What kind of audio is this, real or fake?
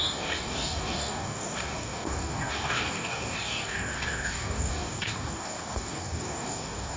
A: fake